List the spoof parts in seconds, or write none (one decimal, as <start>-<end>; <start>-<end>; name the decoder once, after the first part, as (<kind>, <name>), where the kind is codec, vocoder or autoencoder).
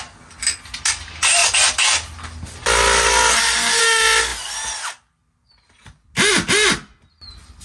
none